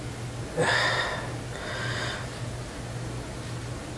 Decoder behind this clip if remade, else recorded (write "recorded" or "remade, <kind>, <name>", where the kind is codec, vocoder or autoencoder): recorded